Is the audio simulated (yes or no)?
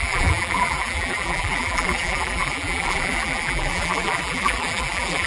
yes